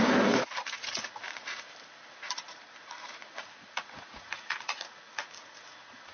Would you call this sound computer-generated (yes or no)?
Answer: yes